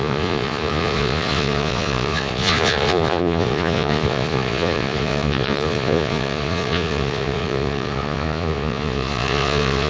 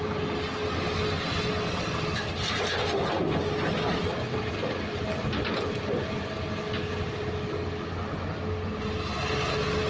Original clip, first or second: second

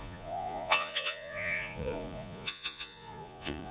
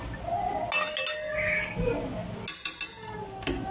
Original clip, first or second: second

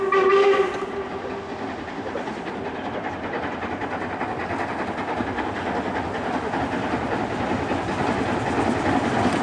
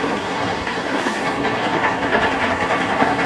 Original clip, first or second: first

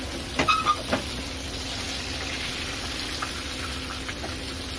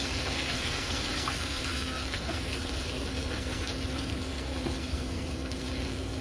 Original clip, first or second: first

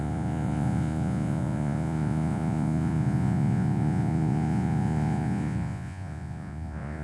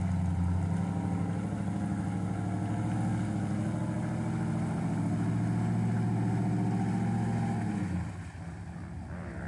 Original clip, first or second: second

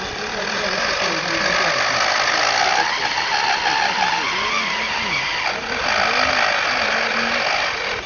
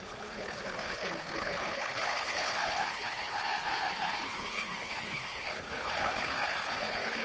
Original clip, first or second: first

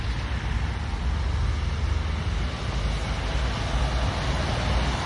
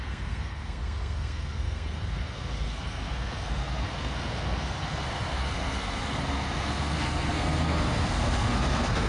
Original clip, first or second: first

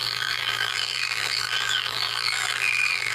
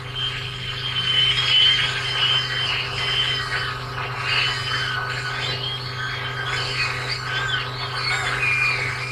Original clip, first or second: second